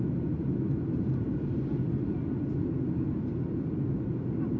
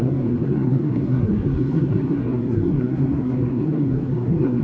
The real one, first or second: first